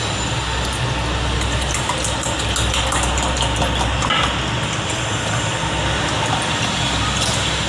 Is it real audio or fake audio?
real